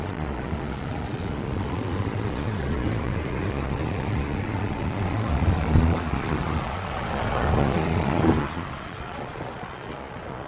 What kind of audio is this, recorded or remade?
remade